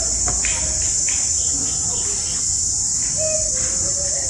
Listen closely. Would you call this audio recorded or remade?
recorded